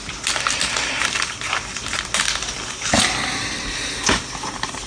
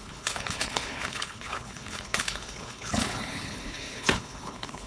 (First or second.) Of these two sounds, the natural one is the first